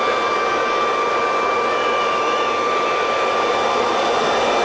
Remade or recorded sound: recorded